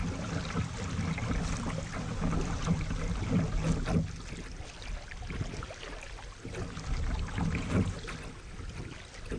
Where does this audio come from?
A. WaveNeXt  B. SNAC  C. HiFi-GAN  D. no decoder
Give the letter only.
D